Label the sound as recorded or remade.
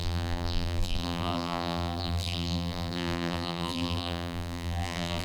remade